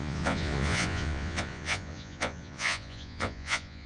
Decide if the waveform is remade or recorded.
remade